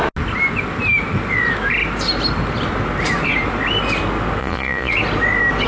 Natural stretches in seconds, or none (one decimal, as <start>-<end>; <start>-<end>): 0.0-4.4; 4.9-5.7